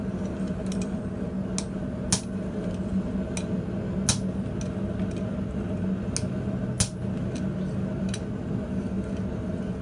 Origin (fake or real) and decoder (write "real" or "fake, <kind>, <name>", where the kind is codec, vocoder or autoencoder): real